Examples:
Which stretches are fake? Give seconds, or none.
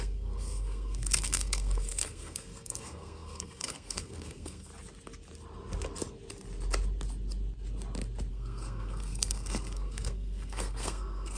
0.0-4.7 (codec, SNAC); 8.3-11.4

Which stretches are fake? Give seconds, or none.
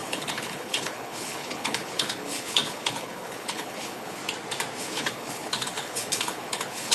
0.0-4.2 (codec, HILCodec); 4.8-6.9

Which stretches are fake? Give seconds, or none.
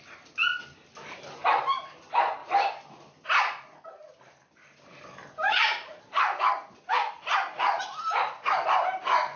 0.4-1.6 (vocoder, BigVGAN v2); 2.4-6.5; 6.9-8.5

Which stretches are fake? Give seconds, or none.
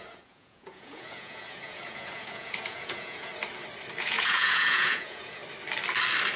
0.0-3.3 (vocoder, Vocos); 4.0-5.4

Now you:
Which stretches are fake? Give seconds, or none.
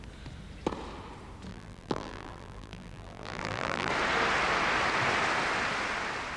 1.5-3.9 (vocoder, BigVGAN v2)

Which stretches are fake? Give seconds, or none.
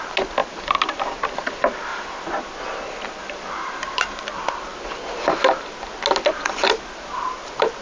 0.4-1.0 (vocoder, BigVGAN v2); 1.9-2.5; 3.2-4.2